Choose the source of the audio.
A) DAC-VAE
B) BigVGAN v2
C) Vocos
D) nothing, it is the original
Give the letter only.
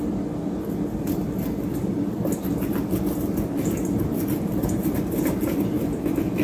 D